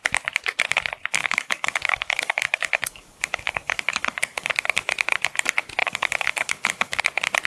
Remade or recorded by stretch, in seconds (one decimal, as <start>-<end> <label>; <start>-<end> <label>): 0.0-1.2 recorded; 1.2-4.5 remade; 4.5-5.8 recorded; 5.8-7.0 remade; 7.0-7.5 recorded